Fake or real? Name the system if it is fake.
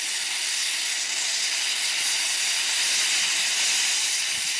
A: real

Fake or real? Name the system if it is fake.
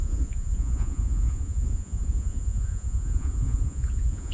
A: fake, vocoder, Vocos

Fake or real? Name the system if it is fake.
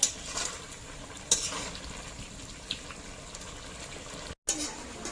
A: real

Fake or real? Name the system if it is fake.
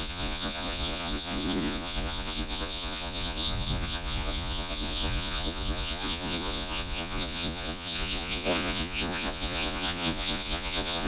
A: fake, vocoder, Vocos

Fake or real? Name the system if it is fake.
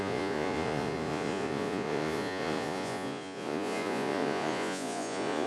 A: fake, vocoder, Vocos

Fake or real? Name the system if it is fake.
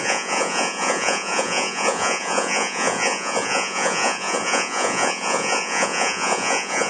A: fake, vocoder, Vocos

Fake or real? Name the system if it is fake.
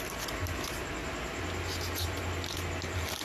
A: real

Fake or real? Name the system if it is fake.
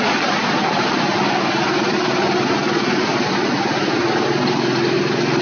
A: real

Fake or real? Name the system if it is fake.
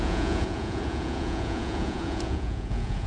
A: fake, vocoder, Vocos